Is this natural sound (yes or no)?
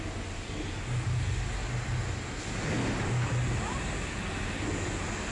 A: yes